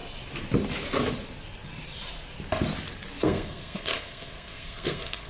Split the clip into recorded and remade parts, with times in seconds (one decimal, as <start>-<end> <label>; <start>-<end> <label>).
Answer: 0.0-3.2 recorded; 3.2-5.3 remade